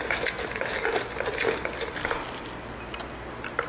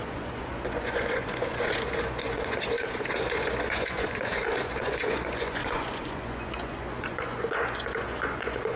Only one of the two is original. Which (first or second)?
first